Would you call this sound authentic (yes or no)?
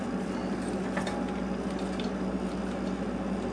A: yes